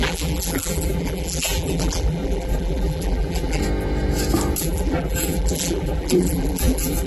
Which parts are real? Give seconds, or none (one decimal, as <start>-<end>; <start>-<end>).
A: 3.6-4.6